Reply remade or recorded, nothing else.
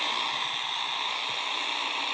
recorded